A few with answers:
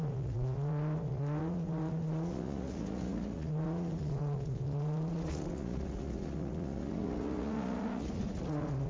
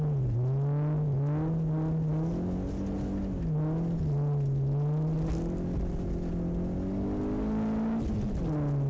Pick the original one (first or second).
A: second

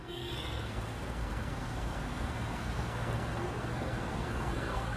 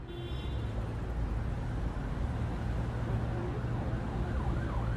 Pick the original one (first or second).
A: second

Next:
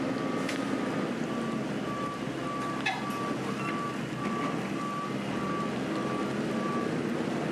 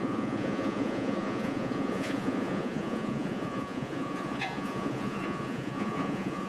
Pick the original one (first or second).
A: first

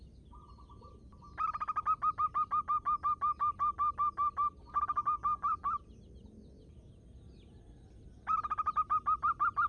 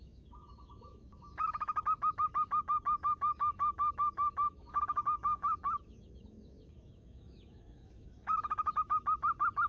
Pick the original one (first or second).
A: first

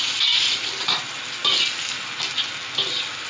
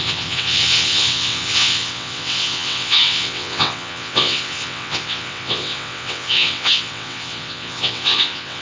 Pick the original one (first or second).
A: first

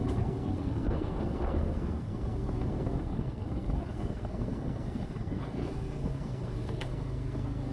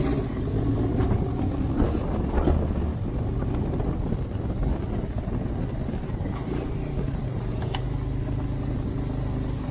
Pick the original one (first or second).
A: second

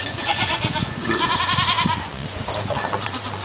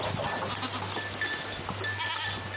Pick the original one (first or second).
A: second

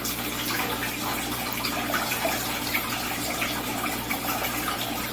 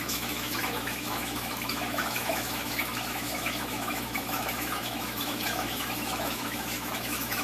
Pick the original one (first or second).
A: first